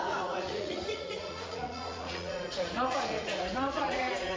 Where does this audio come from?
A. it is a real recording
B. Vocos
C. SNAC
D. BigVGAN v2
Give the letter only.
B